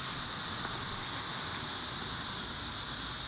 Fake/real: real